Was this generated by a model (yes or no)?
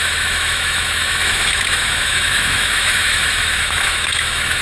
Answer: yes